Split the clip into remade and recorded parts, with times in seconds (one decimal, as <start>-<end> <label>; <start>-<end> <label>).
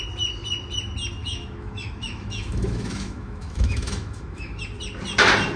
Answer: 0.0-1.2 recorded; 1.2-4.6 remade; 4.6-5.6 recorded